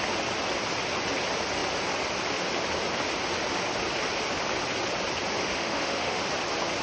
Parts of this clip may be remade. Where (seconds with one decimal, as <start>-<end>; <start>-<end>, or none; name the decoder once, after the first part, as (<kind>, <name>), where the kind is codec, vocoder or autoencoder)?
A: 5.4-6.3 (autoencoder, DAC-VAE)